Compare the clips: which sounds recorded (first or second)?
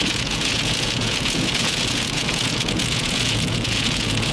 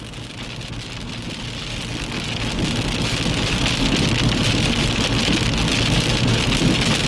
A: second